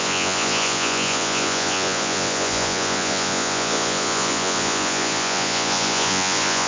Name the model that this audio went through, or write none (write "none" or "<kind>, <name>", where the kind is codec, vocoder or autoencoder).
vocoder, Vocos